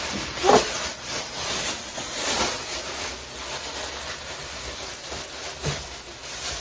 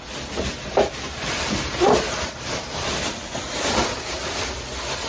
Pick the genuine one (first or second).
first